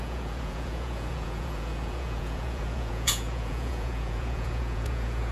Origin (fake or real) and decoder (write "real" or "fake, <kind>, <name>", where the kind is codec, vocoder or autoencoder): fake, vocoder, Vocos